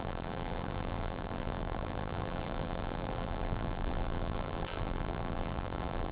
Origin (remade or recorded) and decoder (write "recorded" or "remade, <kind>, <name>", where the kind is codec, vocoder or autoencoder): remade, vocoder, BigVGAN v2